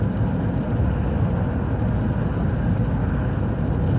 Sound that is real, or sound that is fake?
real